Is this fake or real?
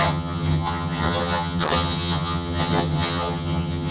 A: fake